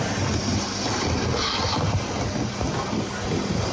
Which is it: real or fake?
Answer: real